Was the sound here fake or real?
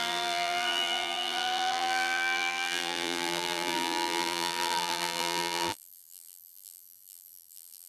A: fake